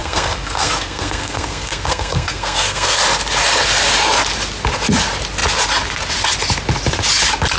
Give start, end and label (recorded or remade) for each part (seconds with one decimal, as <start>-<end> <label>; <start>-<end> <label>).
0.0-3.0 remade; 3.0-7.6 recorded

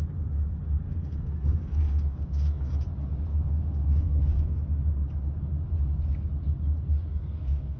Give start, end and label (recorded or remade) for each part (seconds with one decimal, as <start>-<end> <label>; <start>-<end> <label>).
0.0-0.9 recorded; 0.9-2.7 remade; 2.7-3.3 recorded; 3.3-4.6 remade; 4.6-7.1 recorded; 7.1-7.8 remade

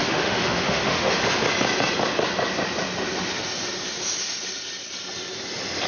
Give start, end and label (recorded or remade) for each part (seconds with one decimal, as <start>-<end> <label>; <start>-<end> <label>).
0.0-1.2 remade; 1.2-5.9 recorded

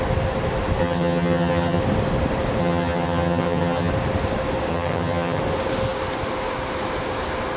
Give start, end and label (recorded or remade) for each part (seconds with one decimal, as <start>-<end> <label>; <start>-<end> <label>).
0.0-0.8 recorded; 0.8-1.8 remade; 1.8-2.6 recorded; 2.6-3.9 remade; 3.9-4.7 recorded; 4.7-5.4 remade; 5.4-7.6 recorded